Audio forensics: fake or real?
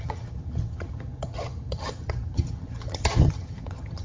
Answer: fake